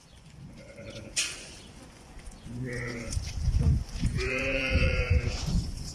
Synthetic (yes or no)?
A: yes